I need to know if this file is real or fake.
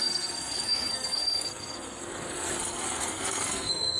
fake